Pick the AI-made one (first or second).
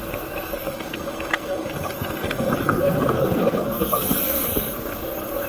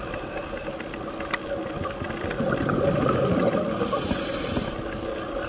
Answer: first